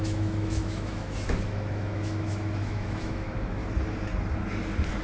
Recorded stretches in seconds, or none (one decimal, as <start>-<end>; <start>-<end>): 3.6-5.0